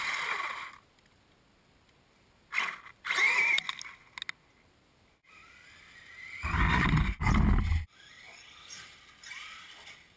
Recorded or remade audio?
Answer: recorded